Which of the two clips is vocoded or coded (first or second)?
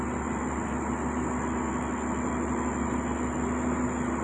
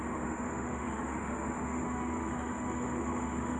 second